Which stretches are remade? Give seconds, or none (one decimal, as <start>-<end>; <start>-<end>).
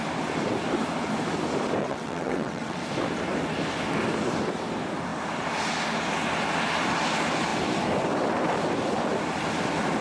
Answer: 1.8-2.8